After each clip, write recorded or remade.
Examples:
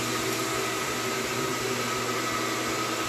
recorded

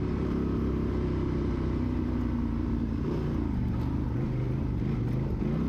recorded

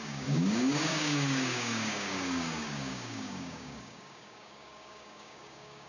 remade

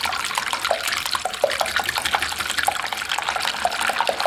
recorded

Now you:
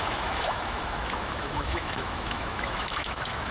remade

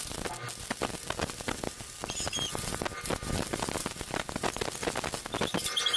recorded